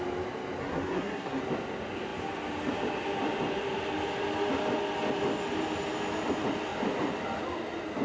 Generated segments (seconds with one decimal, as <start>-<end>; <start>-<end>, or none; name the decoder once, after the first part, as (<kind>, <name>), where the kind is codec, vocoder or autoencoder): 0.6-1.4 (codec, SNAC)